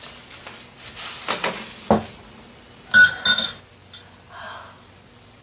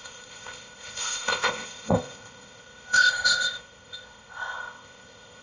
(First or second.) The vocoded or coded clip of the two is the second